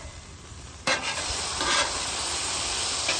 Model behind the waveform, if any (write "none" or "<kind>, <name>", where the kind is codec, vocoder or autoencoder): vocoder, BigVGAN v2